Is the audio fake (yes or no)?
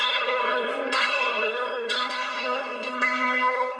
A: yes